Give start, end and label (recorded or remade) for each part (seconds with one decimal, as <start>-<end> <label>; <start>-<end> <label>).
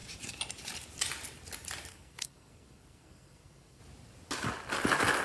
0.0-1.9 recorded; 1.9-3.8 remade; 3.8-5.2 recorded